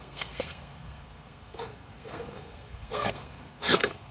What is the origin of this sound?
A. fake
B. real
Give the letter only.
A